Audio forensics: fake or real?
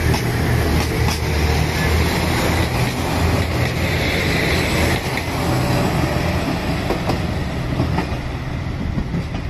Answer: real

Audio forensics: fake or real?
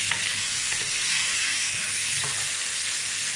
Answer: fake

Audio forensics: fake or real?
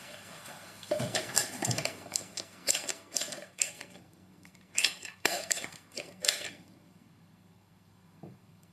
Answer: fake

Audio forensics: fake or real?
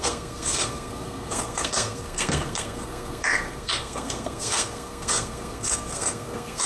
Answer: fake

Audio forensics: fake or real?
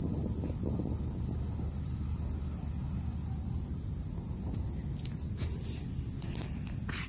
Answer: real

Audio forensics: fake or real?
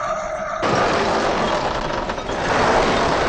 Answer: real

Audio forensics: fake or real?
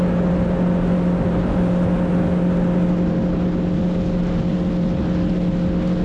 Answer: real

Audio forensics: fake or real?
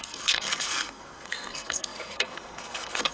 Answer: fake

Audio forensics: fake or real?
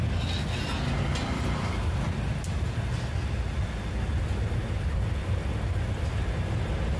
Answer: real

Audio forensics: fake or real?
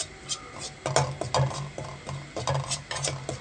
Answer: real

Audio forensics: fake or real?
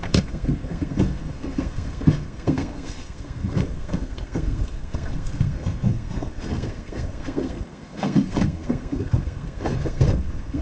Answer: fake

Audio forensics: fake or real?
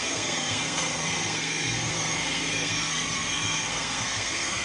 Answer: fake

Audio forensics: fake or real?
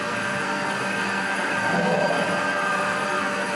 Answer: fake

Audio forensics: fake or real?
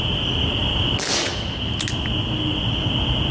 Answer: real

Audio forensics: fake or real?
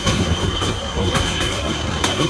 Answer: fake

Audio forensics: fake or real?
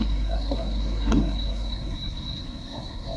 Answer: fake